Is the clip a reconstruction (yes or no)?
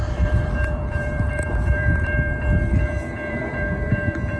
yes